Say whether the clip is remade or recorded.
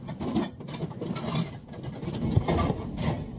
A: recorded